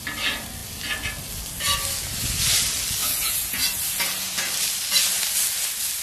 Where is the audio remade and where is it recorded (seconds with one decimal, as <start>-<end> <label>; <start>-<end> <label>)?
0.0-3.0 recorded; 3.0-3.6 remade; 3.6-6.0 recorded